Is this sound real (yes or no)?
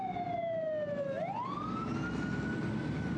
yes